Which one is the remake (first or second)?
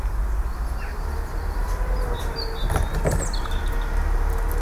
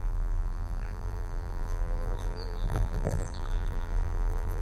second